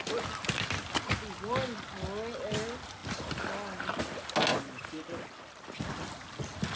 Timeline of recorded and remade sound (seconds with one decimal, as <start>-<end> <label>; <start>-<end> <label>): 0.0-6.8 recorded